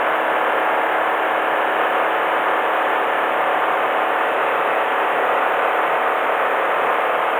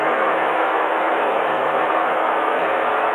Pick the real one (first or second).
first